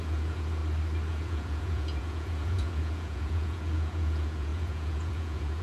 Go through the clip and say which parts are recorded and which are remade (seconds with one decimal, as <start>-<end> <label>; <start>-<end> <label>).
0.0-0.6 remade; 0.6-1.1 recorded; 1.1-5.6 remade